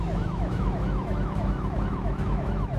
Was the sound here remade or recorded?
remade